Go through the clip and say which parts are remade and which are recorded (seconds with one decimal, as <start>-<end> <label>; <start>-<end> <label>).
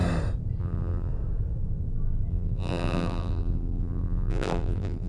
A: 0.0-0.6 recorded; 0.6-1.1 remade; 1.1-2.3 recorded; 2.3-5.1 remade